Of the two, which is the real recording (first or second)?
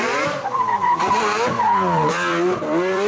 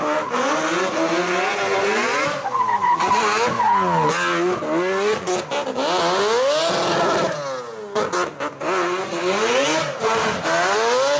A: second